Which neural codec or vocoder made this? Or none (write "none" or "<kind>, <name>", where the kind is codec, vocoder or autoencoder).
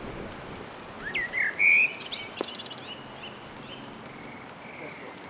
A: none